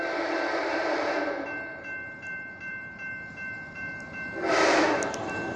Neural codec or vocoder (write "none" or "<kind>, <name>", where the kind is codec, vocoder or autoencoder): vocoder, BigVGAN v2